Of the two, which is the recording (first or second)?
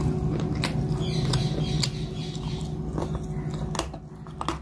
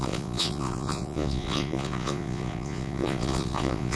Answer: first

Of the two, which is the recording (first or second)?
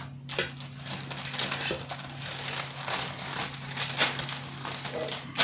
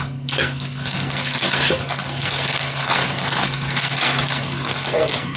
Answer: first